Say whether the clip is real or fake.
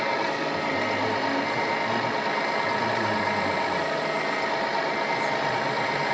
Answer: real